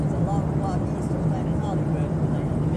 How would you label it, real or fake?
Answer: real